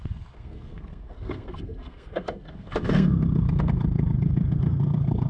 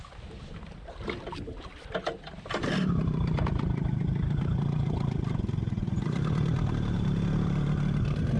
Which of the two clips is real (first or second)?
second